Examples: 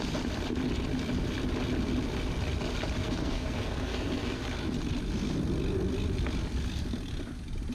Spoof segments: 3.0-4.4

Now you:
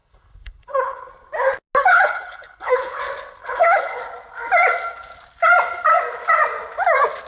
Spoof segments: 0.0-1.1; 1.9-3.0; 3.4-4.0

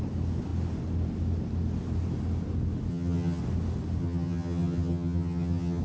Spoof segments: 2.9-3.4; 4.0-5.8

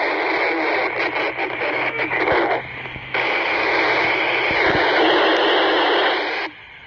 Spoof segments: 1.4-2.2; 2.7-3.4